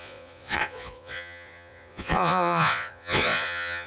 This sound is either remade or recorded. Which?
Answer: remade